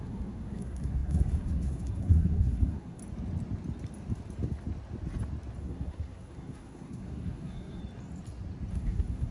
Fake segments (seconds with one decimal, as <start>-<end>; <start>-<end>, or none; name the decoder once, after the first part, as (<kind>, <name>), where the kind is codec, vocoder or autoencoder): 0.0-3.0 (codec, SNAC); 5.6-7.8; 8.7-9.3